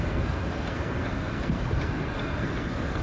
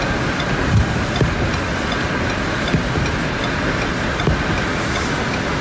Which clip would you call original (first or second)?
second